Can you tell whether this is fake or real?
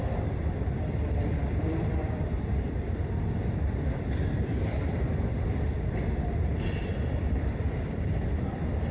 fake